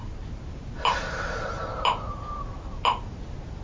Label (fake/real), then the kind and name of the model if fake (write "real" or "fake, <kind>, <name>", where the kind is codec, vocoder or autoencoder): real